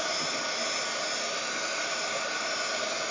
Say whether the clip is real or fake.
real